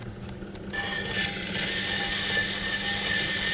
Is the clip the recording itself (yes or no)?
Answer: yes